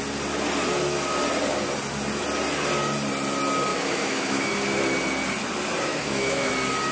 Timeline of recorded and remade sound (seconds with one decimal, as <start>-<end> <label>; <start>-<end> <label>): 0.0-3.7 recorded; 3.7-4.5 remade; 4.5-5.9 recorded; 5.9-6.5 remade; 6.5-6.9 recorded

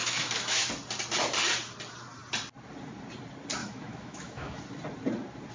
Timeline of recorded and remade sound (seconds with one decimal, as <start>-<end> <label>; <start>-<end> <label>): 0.0-0.7 remade; 0.7-3.6 recorded; 3.6-4.6 remade; 4.6-5.5 recorded